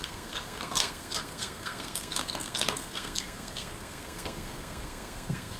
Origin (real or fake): fake